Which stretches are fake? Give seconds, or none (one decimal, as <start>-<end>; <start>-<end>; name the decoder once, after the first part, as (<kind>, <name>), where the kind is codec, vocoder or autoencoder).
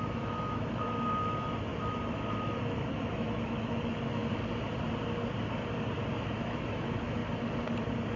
0.0-4.2 (autoencoder, DAC-VAE); 6.2-7.2